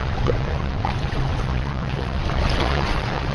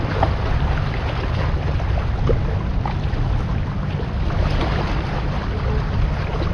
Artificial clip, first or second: first